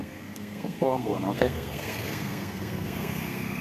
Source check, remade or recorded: remade